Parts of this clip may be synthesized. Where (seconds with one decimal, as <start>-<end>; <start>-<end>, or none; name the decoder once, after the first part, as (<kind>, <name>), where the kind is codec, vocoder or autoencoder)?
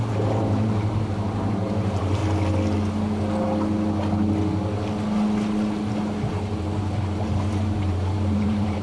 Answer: 0.0-2.2 (vocoder, BigVGAN v2); 6.3-8.8